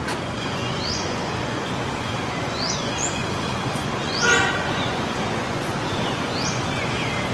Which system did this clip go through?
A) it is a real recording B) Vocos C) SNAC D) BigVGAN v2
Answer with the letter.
B